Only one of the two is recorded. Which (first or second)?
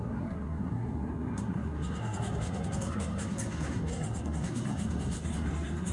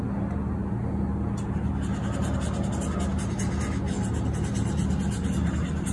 second